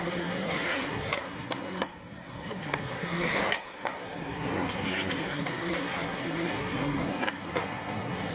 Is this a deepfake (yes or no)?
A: yes